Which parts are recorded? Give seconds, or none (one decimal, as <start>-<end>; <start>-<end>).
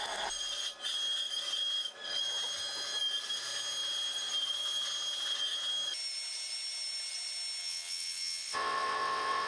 0.0-7.6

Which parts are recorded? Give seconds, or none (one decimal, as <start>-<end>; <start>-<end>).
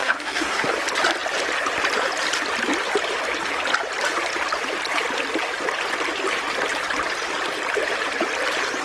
0.7-8.8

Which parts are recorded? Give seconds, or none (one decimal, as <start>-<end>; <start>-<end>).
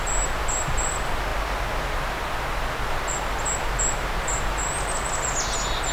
0.0-5.9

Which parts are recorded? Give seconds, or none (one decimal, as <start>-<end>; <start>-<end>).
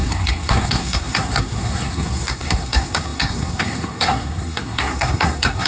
none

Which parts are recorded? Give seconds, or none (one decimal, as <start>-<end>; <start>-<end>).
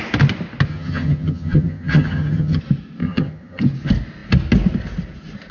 0.0-0.7; 2.6-3.0; 3.6-5.5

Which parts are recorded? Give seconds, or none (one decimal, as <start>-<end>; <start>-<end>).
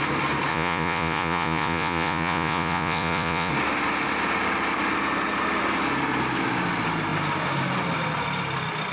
0.0-0.5; 3.5-8.9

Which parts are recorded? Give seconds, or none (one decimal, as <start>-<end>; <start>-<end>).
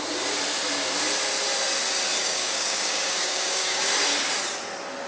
0.0-2.2; 3.9-5.1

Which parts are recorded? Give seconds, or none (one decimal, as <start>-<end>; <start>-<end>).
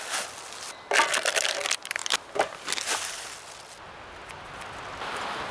0.0-5.5